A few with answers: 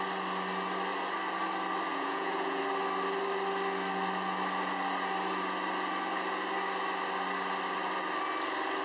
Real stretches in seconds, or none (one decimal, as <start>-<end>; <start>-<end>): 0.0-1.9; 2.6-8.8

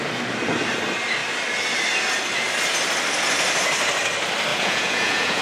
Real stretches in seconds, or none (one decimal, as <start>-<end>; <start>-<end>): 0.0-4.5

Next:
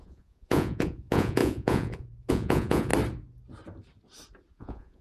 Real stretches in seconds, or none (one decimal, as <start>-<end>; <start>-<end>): 2.9-4.5